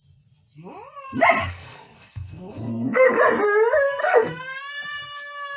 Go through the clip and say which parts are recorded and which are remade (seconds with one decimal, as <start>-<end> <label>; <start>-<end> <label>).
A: 0.0-1.4 recorded; 1.4-3.2 remade; 3.2-4.0 recorded; 4.0-4.6 remade; 4.6-5.6 recorded